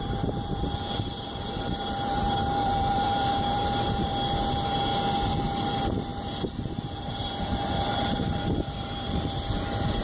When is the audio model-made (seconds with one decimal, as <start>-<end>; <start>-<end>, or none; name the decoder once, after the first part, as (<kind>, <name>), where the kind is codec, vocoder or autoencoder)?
0.0-4.1 (vocoder, BigVGAN v2); 5.2-10.0